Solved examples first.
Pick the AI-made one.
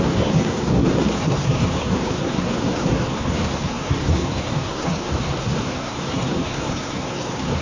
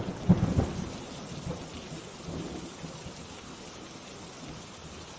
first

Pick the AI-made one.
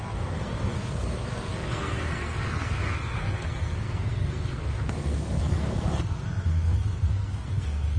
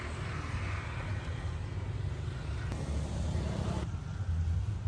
first